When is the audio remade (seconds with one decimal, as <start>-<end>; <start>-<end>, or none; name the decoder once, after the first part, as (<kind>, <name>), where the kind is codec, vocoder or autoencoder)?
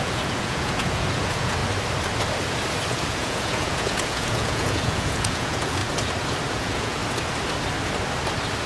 0.0-1.6 (vocoder, Vocos); 2.9-5.8; 6.5-7.0